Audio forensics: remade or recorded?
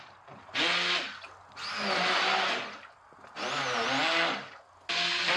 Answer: recorded